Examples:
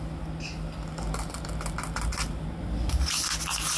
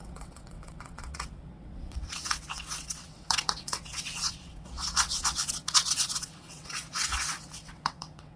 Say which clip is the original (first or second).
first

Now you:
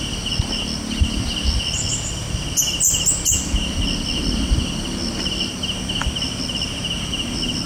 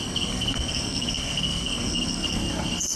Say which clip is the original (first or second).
first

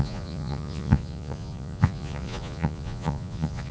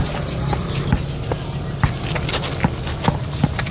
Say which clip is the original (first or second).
second